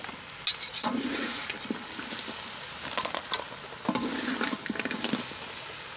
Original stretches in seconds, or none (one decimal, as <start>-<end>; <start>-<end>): 0.0-0.7; 1.5-6.0

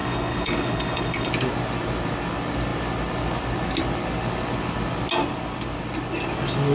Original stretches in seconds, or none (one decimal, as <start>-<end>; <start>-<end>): 1.3-6.7

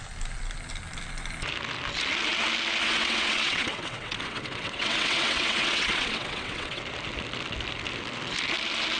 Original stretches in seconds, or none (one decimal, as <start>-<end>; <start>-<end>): 0.0-2.8; 6.8-9.0

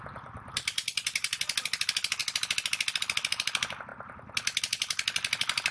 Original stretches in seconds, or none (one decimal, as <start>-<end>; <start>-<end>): 3.9-4.6

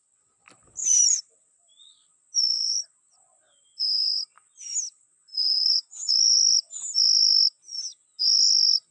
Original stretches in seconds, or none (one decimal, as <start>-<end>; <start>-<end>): 0.0-0.8; 1.9-5.3; 6.1-8.9

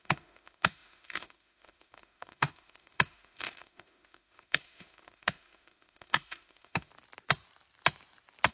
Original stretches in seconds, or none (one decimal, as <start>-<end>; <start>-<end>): 6.9-8.5